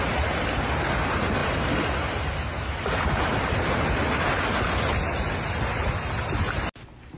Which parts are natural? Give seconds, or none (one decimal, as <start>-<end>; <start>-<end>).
0.0-7.2